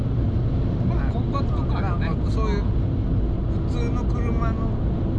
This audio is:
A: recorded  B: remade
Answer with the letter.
A